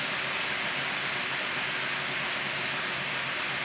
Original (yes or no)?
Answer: yes